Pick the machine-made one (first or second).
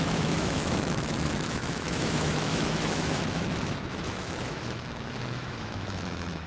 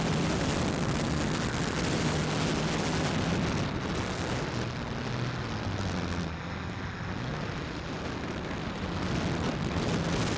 first